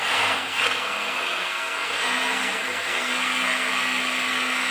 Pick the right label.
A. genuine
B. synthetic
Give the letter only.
B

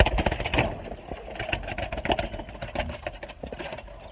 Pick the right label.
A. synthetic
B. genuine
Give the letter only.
B